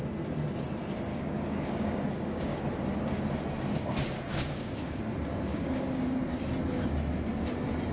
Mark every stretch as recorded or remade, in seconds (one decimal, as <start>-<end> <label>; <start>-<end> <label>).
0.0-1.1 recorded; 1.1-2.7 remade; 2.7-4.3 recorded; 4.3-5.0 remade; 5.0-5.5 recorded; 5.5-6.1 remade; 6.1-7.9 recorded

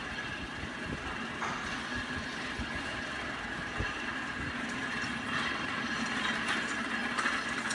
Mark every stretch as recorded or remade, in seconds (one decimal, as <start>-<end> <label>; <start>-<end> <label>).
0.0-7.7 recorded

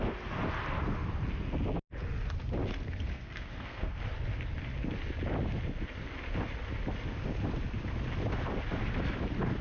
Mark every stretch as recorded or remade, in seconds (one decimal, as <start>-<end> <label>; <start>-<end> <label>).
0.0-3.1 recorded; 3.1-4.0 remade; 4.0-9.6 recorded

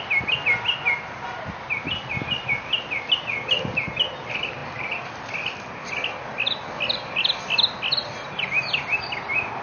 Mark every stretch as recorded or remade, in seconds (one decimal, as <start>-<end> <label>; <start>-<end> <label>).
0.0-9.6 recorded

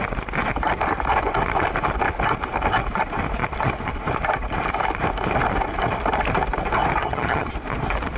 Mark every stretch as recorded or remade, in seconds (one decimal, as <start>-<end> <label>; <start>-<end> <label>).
0.0-7.0 recorded; 7.0-7.5 remade; 7.5-8.2 recorded